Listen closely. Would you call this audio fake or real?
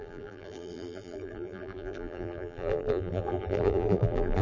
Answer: fake